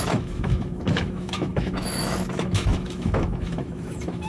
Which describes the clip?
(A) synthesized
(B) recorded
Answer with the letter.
A